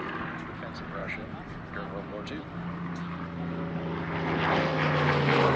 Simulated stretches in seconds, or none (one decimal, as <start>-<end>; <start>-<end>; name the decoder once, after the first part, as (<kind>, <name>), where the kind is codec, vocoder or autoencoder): 1.0-1.6 (vocoder, BigVGAN v2)